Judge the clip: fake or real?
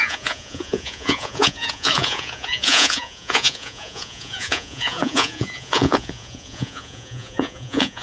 fake